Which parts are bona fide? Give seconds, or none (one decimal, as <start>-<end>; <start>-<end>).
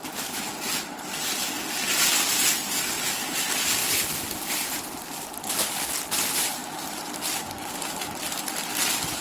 0.0-9.2